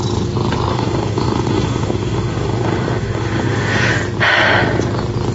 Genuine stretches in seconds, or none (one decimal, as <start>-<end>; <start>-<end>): 0.0-0.7; 3.9-5.3